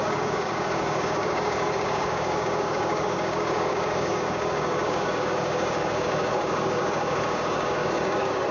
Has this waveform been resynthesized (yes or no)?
yes